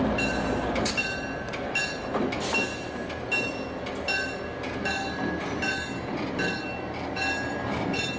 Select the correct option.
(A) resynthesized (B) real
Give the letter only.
B